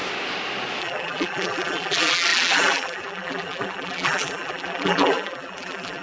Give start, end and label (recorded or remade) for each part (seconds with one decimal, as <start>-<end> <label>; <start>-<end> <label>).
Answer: 0.0-0.8 recorded; 0.8-6.0 remade